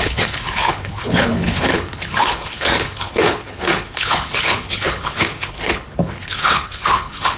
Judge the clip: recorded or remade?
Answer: remade